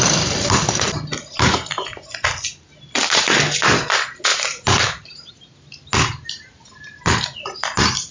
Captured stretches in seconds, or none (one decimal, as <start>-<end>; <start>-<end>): 0.0-4.3; 5.3-8.1